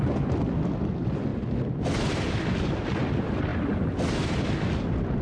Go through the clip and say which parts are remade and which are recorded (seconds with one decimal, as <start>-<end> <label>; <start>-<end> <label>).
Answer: 0.0-5.2 recorded